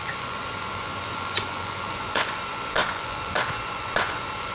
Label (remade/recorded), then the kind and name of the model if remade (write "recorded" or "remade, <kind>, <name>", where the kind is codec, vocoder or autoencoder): remade, vocoder, Vocos